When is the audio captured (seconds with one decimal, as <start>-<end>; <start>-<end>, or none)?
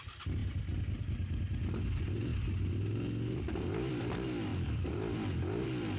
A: 0.0-2.3; 4.0-4.5